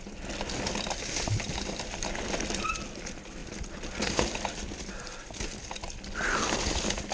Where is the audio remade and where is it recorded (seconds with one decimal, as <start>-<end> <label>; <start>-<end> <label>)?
0.0-7.1 recorded